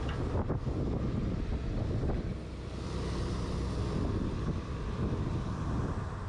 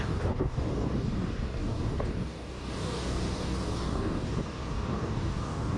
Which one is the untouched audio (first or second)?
first